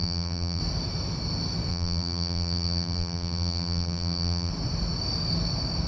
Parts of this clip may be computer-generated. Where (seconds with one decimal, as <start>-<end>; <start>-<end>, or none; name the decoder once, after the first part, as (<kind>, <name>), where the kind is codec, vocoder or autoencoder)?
0.0-0.6 (vocoder, BigVGAN v2); 1.7-4.5